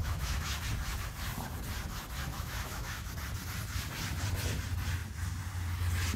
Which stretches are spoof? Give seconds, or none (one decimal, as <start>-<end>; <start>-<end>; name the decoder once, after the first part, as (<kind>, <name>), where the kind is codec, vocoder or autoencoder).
0.0-0.6 (autoencoder, DAC-VAE); 2.3-3.1